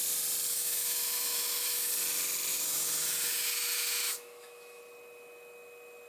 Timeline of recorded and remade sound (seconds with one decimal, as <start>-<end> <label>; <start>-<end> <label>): 0.0-0.5 recorded; 0.5-1.9 remade; 1.9-2.5 recorded; 2.5-4.8 remade; 4.8-6.1 recorded